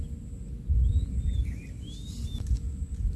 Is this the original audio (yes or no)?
yes